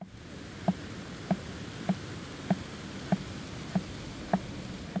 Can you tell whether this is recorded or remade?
recorded